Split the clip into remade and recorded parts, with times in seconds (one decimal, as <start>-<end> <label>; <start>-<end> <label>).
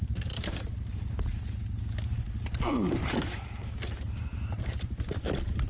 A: 0.0-1.2 remade; 1.2-2.7 recorded; 2.7-5.2 remade; 5.2-5.7 recorded